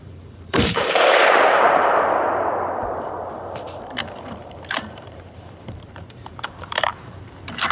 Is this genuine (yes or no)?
no